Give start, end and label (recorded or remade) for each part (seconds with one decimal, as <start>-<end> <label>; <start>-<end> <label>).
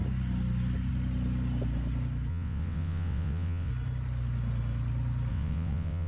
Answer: 0.0-2.3 recorded; 2.3-3.7 remade; 3.7-5.3 recorded; 5.3-6.1 remade